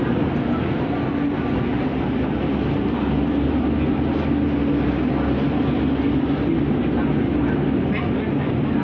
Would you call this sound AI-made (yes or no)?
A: no